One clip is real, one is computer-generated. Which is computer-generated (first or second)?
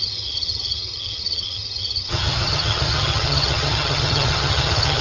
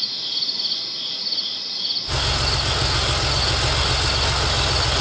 first